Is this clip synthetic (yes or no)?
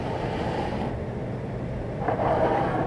yes